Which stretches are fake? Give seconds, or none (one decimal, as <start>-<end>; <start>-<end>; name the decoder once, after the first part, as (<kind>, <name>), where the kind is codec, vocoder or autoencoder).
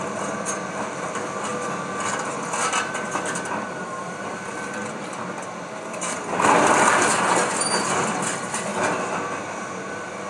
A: 0.0-6.9 (vocoder, BigVGAN v2); 8.1-8.7; 9.9-10.3